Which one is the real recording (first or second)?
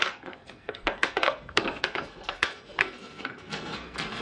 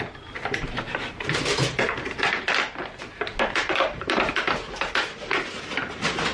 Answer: second